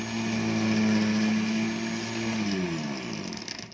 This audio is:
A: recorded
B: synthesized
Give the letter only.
A